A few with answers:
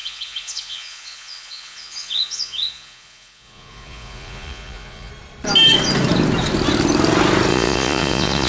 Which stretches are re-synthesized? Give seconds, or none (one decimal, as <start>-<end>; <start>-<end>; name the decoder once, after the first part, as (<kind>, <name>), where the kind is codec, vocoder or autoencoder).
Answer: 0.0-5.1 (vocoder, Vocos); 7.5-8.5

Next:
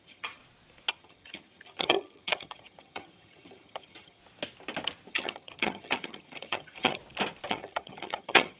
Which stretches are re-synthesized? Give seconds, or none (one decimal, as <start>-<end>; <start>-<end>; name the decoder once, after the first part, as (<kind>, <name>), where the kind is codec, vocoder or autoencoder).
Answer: 0.0-0.4 (vocoder, HiFi-GAN); 0.9-4.2; 5.1-7.0; 7.5-8.6

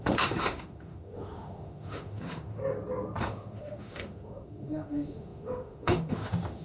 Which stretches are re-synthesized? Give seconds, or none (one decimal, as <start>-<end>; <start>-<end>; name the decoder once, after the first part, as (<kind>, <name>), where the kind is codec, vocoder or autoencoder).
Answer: 0.0-2.6 (autoencoder, DAC-VAE); 3.2-6.6